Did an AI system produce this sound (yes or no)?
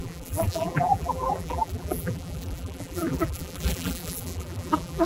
yes